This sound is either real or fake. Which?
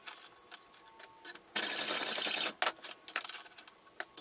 real